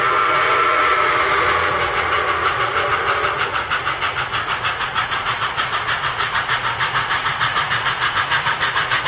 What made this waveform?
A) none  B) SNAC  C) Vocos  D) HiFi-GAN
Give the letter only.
C